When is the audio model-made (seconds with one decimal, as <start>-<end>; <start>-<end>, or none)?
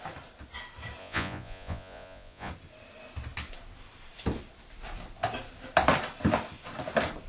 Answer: 1.0-2.5